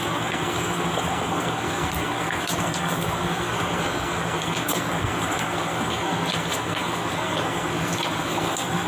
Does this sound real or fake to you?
fake